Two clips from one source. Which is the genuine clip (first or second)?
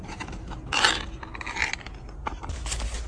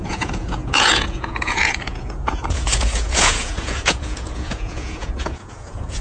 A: first